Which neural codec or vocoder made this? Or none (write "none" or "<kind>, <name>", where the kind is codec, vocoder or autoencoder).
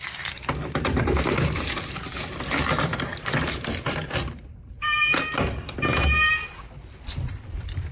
vocoder, BigVGAN v2